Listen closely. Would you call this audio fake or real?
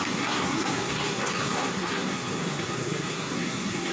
fake